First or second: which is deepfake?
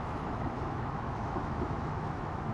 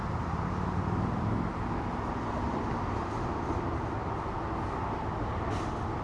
first